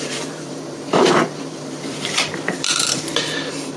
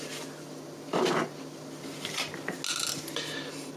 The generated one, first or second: first